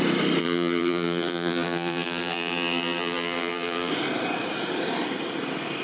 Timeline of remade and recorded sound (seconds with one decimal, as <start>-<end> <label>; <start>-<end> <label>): 0.0-0.4 recorded; 0.4-3.9 remade; 3.9-5.8 recorded